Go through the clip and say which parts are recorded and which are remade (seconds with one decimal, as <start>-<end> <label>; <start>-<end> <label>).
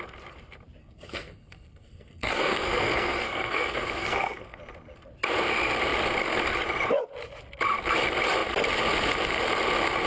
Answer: 0.0-0.8 recorded; 0.8-4.6 remade; 4.6-10.1 recorded